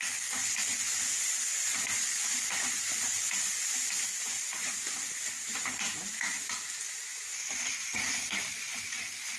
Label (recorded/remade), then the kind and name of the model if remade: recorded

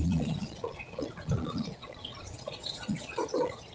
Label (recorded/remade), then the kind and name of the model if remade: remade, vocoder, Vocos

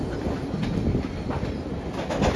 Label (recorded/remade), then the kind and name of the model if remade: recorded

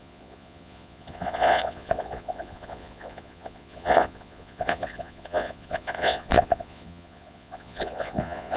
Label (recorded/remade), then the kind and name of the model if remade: remade, vocoder, Vocos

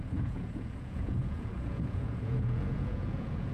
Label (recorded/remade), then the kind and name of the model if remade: remade, vocoder, Vocos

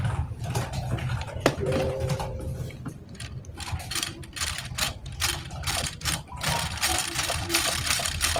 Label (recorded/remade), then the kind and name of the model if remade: remade, vocoder, BigVGAN v2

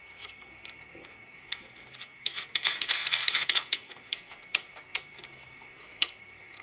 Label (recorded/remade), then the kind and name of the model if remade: remade, codec, SNAC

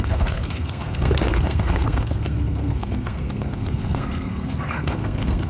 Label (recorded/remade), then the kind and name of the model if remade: remade, codec, SNAC